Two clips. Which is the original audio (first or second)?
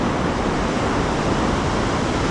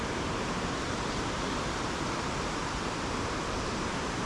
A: first